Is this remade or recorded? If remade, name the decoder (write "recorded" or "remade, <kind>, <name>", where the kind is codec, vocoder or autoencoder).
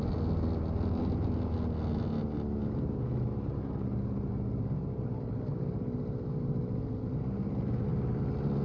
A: recorded